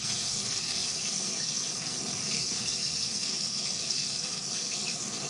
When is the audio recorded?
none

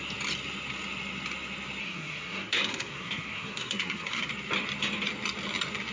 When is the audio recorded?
0.0-1.8; 4.3-5.9

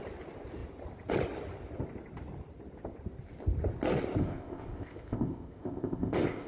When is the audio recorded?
0.0-4.2

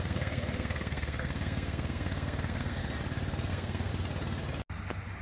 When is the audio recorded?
2.8-3.5; 3.9-5.2

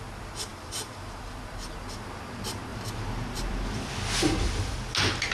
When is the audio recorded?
0.0-0.5; 1.8-2.7; 4.0-5.3

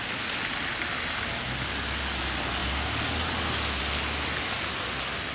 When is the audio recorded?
0.0-5.3

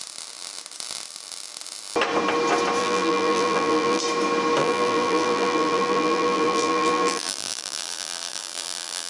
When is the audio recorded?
0.0-2.8; 4.0-4.6

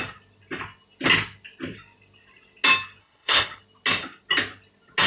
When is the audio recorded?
0.0-3.0; 3.6-5.1